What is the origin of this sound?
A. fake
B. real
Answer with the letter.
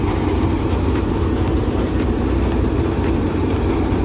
B